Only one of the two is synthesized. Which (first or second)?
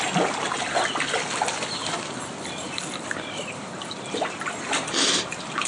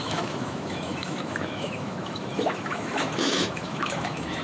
second